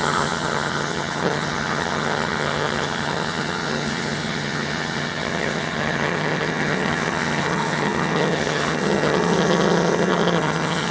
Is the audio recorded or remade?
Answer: remade